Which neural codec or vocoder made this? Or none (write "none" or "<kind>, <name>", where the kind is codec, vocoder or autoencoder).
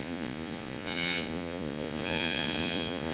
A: vocoder, Vocos